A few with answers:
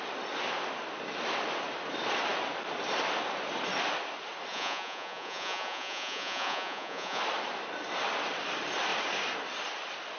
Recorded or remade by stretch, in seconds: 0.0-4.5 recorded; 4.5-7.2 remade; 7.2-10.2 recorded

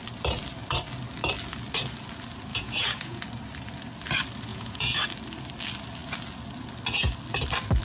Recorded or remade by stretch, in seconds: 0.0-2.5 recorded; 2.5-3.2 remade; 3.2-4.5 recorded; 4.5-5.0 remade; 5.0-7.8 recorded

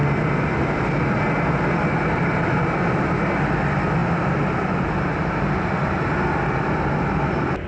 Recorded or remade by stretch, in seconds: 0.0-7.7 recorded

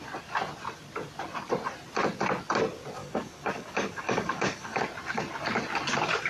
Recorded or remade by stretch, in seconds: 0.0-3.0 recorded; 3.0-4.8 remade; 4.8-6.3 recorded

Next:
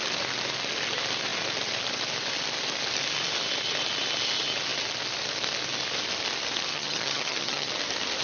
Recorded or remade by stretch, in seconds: 0.0-6.7 recorded; 6.7-7.7 remade; 7.7-8.2 recorded

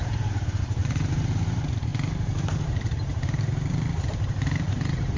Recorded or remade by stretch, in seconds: 0.0-5.2 remade